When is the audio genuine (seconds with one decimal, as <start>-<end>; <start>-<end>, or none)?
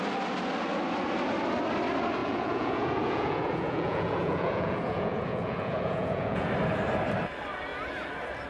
0.0-2.2; 6.5-8.5